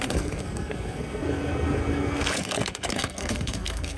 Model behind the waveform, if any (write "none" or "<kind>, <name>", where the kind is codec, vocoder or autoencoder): codec, SNAC